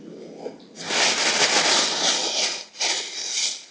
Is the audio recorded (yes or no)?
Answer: yes